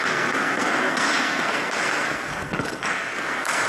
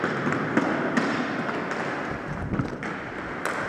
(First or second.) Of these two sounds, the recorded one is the second